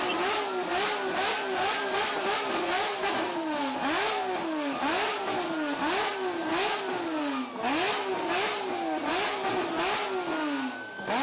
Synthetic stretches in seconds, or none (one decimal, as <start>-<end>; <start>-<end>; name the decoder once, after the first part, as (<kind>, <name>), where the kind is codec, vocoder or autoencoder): none